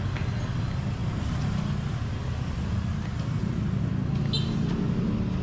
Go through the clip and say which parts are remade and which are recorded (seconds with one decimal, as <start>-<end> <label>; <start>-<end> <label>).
0.0-5.4 recorded